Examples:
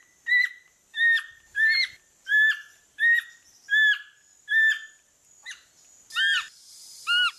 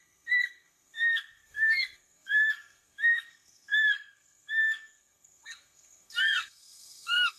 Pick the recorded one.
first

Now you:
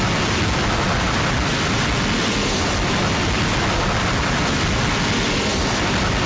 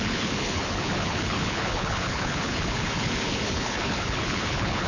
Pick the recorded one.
first